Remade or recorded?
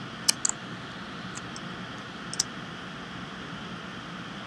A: recorded